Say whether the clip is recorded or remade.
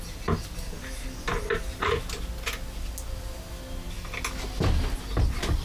recorded